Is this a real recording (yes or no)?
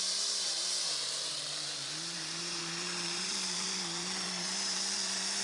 no